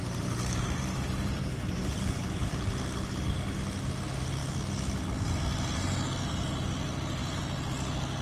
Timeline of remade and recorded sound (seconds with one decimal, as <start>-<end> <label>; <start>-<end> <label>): 0.0-2.5 remade; 2.5-8.2 recorded